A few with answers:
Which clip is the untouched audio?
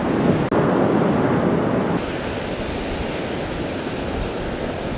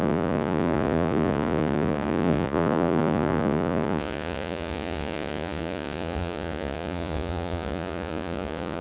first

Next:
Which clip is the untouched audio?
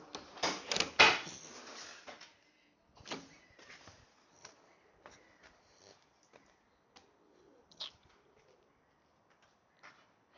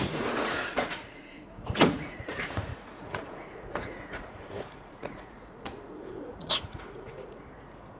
first